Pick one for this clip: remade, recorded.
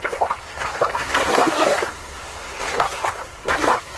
remade